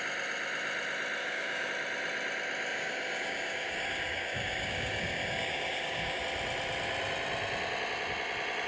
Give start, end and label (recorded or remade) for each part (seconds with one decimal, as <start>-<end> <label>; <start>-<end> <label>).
0.0-1.2 recorded; 1.2-1.7 remade; 1.7-2.7 recorded; 2.7-6.2 remade; 6.2-8.7 recorded